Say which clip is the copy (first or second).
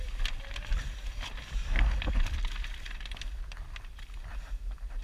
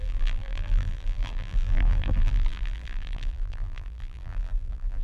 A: second